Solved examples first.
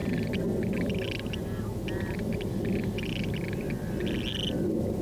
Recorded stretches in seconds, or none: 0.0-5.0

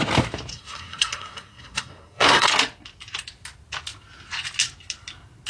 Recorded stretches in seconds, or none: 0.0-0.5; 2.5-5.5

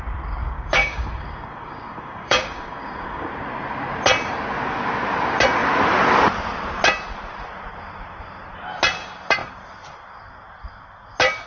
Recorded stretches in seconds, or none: 0.0-0.4; 3.3-11.5

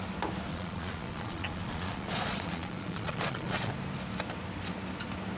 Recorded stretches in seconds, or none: 0.0-0.5; 3.7-5.4

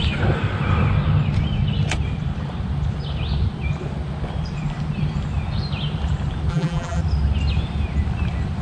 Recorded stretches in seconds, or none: 0.0-6.5; 7.0-8.6

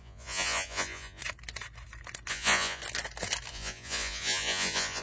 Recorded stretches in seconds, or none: 1.2-2.3; 2.8-3.5

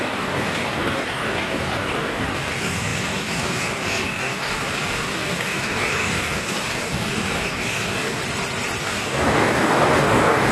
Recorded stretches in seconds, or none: 8.2-8.8